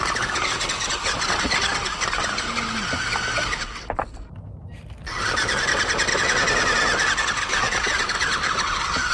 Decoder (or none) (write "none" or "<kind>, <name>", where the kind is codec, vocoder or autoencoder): none